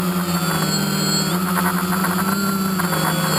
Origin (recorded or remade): recorded